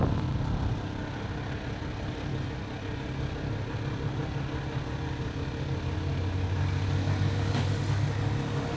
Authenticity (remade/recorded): recorded